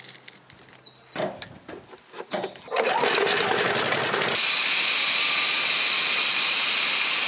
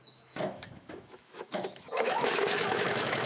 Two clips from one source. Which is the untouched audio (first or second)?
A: first